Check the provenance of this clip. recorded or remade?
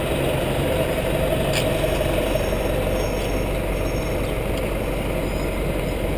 recorded